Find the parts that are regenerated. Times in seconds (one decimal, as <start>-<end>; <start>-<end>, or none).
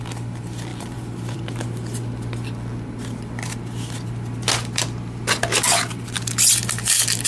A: 0.7-1.4